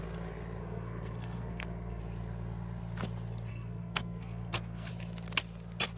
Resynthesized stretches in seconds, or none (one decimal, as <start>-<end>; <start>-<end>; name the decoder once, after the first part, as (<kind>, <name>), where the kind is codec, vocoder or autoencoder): 0.6-2.0 (codec, SNAC); 3.5-4.9